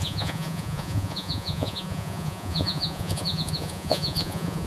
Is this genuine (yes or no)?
no